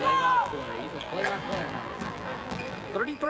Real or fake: fake